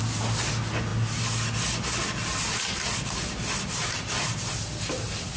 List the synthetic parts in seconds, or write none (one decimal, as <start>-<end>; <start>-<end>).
none